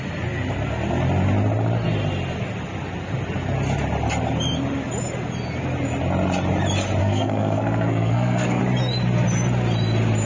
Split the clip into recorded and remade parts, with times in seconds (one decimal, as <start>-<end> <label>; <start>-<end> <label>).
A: 0.0-7.0 recorded; 7.0-8.6 remade; 8.6-10.3 recorded